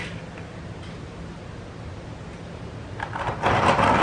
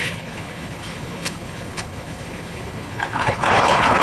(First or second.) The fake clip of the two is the second